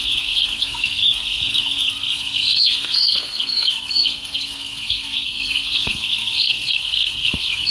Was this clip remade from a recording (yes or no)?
yes